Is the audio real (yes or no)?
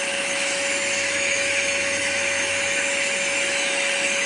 no